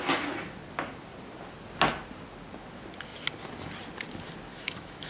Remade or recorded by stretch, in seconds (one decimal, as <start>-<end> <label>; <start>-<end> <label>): 0.0-4.5 recorded; 4.5-5.1 remade